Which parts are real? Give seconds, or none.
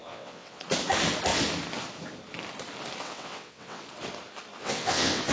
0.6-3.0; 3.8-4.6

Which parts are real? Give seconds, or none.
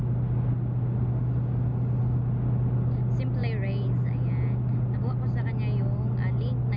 0.0-6.8